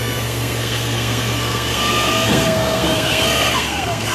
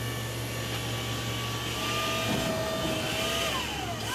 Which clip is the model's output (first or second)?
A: first